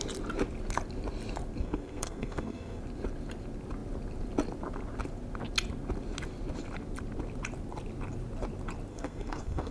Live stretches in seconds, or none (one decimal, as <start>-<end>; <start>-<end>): 0.0-1.6; 2.8-8.9